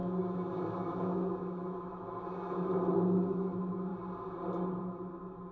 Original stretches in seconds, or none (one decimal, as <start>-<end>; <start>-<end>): 3.9-4.8